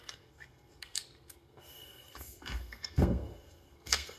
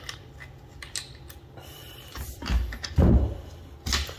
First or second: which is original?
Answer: second